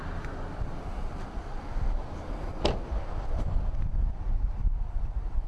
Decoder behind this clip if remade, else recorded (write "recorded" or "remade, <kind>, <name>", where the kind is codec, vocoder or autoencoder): recorded